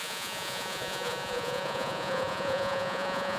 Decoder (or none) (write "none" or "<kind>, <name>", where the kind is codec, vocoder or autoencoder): vocoder, Vocos